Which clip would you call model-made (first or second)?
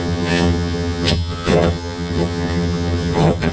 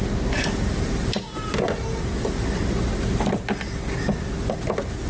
first